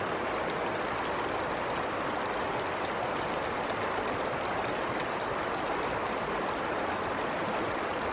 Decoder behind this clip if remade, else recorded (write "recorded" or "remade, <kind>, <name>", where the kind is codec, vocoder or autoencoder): recorded